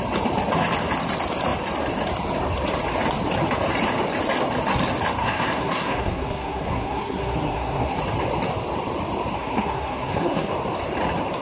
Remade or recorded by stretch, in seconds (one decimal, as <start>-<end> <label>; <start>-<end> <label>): 0.0-5.2 recorded; 5.2-8.0 remade; 8.0-9.4 recorded; 9.4-10.5 remade; 10.5-11.4 recorded

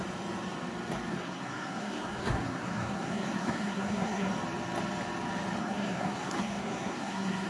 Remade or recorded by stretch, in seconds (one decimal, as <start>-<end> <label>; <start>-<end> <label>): 0.0-1.1 recorded; 1.1-4.3 remade; 4.3-5.6 recorded; 5.6-7.5 remade

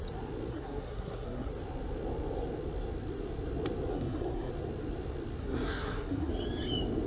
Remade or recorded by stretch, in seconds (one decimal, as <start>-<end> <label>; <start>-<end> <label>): 0.0-0.5 recorded; 0.5-1.5 remade; 1.5-3.9 recorded; 3.9-4.5 remade; 4.5-5.4 recorded; 5.4-6.3 remade; 6.3-7.1 recorded

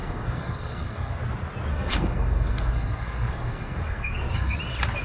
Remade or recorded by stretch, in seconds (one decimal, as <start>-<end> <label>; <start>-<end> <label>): 0.0-1.2 remade; 1.2-1.7 recorded; 1.7-4.6 remade; 4.6-5.0 recorded

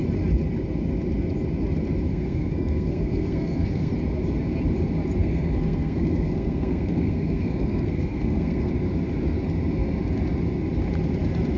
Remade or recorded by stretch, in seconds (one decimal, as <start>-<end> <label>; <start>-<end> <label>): 0.0-2.1 recorded; 2.1-3.9 remade; 3.9-5.2 recorded; 5.2-8.7 remade; 8.7-11.6 recorded

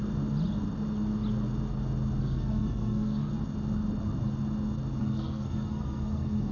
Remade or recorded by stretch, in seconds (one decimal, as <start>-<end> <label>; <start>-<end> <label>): 0.0-2.2 recorded; 2.2-3.3 remade; 3.3-5.0 recorded; 5.0-6.5 remade